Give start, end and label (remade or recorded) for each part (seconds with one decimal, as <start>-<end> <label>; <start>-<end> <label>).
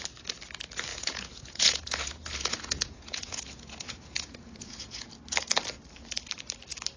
0.0-0.9 recorded; 0.9-5.1 remade; 5.1-7.0 recorded